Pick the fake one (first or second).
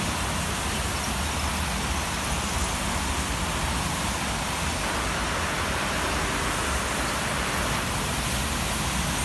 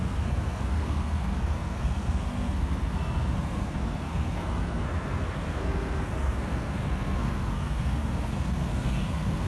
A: second